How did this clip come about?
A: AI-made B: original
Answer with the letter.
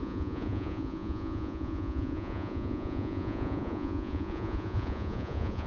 A